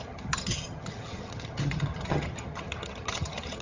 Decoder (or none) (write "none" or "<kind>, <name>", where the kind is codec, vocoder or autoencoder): vocoder, HiFi-GAN